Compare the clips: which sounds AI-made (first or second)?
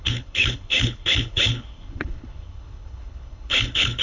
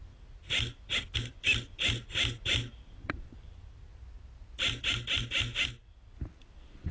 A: first